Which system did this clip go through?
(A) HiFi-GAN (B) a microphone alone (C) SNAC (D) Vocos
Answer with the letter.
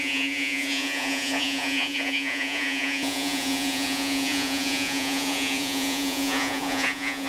D